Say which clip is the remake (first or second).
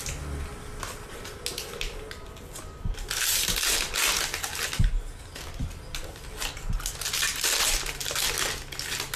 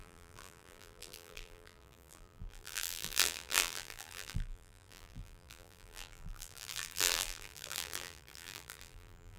second